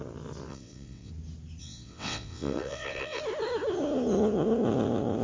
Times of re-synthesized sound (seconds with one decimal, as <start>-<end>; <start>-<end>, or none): 0.5-1.1; 1.6-3.2